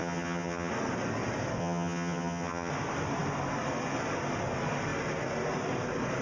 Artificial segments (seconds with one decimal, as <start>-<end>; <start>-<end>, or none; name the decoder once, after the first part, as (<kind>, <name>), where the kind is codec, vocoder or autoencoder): 0.0-0.7 (vocoder, HiFi-GAN); 1.6-2.7